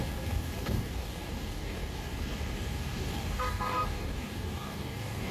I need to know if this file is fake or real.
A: fake